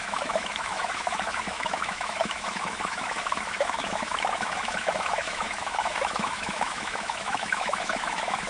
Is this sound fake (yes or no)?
yes